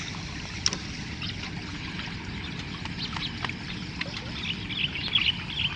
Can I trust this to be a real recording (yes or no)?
yes